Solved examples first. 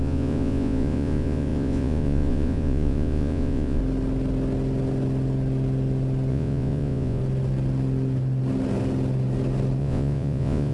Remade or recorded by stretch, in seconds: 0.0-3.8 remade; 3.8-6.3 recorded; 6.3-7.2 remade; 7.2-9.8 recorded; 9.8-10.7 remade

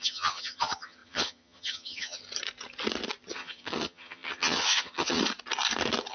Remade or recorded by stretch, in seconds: 0.0-2.2 remade; 2.2-3.3 recorded; 3.3-5.2 remade; 5.2-6.1 recorded